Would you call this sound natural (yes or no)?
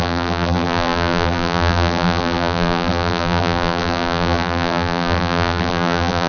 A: no